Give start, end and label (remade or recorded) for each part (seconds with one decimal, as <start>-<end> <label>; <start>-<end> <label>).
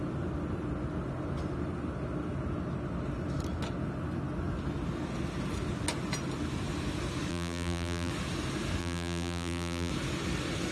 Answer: 0.0-7.3 recorded; 7.3-8.1 remade; 8.1-8.8 recorded; 8.8-9.9 remade; 9.9-10.7 recorded